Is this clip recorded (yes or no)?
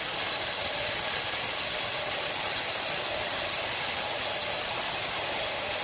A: yes